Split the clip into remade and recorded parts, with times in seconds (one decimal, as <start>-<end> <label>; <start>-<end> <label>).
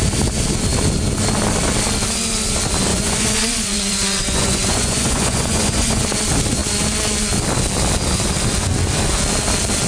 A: 0.0-2.9 recorded; 2.9-6.0 remade; 6.0-9.9 recorded